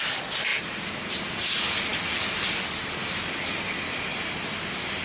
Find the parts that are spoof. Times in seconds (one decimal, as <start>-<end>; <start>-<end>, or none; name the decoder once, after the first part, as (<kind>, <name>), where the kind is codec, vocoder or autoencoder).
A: none

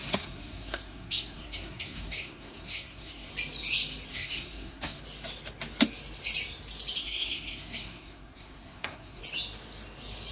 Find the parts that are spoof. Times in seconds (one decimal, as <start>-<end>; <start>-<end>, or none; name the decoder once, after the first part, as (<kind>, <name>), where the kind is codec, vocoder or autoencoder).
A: 0.0-3.3 (codec, SNAC); 4.1-5.0; 7.0-9.2